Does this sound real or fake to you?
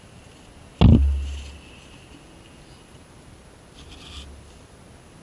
real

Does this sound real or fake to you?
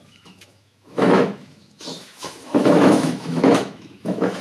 fake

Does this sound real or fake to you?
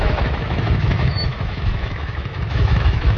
fake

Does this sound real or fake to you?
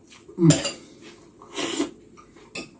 real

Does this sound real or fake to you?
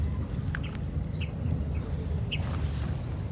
real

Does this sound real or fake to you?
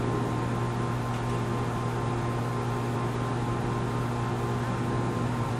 real